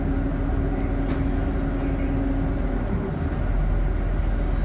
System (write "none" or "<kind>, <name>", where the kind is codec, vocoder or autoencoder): none